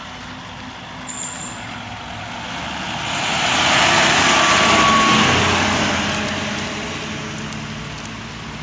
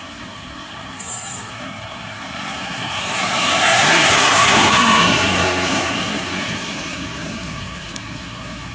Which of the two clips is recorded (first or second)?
first